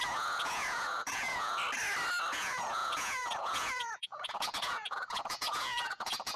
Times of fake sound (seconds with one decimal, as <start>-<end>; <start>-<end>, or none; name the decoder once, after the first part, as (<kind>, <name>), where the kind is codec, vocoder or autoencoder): 0.0-1.6 (vocoder, Vocos); 2.3-6.4